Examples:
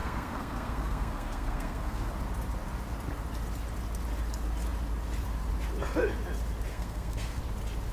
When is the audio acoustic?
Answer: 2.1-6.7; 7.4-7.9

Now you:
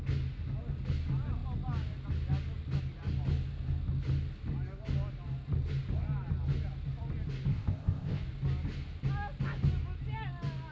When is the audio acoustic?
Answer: 0.0-7.5; 8.2-10.7

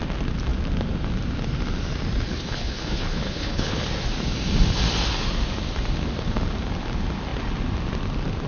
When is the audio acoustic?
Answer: 0.0-2.3; 3.8-8.5

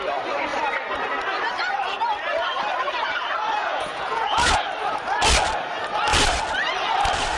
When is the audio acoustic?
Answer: 0.0-3.6; 4.6-7.4